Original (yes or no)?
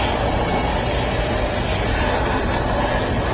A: yes